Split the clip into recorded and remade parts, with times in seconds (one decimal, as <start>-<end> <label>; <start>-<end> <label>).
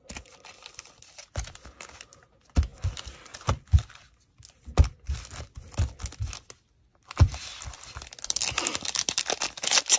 0.0-10.0 recorded